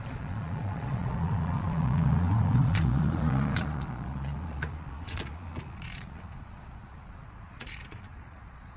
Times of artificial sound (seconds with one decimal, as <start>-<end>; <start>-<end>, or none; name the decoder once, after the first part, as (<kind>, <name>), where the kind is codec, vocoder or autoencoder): 0.0-8.8 (vocoder, Vocos)